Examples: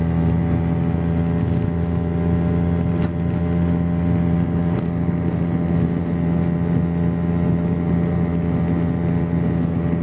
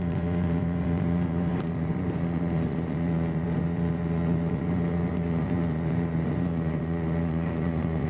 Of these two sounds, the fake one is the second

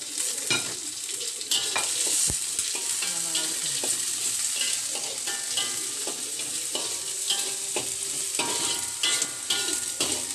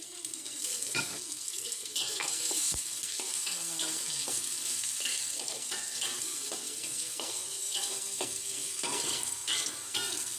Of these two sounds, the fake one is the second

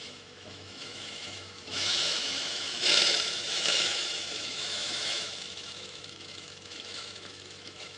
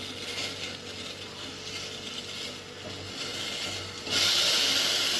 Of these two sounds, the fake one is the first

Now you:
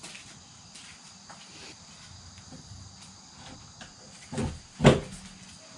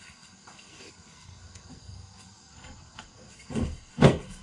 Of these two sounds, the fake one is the second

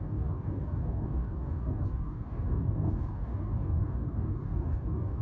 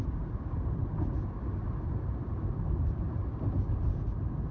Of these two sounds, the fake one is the first